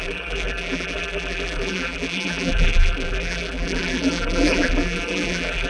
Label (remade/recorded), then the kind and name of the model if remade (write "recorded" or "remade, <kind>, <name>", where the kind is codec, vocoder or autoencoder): remade, vocoder, BigVGAN v2